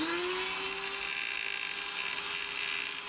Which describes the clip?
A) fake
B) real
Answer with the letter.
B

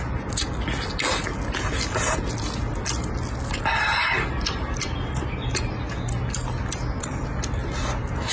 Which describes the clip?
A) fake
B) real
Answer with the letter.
B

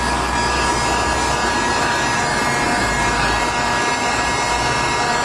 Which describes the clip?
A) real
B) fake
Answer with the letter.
A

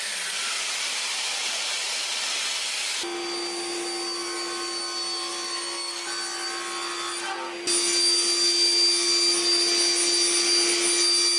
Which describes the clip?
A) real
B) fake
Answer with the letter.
A